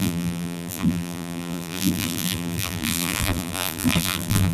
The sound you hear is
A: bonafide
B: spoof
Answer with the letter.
B